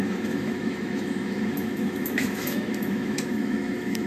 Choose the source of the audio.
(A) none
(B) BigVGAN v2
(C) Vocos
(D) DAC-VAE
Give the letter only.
D